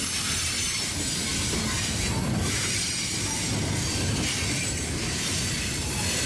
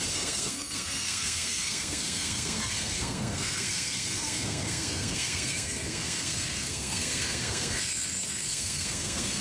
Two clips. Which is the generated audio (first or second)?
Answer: second